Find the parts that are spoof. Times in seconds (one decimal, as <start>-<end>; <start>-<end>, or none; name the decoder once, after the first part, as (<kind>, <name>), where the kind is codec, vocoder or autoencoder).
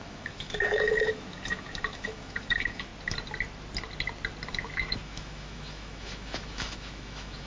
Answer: 0.0-2.9 (autoencoder, DAC-VAE); 4.5-7.5